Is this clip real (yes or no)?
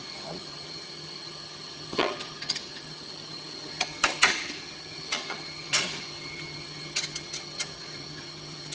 no